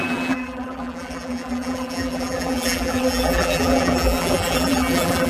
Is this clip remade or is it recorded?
remade